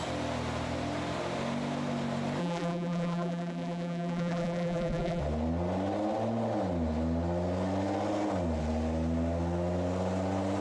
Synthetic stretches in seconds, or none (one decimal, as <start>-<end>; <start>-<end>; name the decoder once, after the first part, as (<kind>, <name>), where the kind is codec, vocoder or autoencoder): 2.4-5.2 (vocoder, BigVGAN v2)